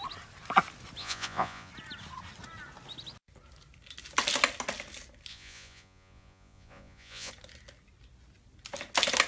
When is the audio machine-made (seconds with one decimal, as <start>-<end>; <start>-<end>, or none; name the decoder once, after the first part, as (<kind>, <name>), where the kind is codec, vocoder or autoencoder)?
1.0-1.7 (vocoder, Vocos); 5.3-7.3